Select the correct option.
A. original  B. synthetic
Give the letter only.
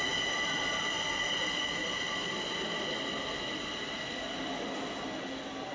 A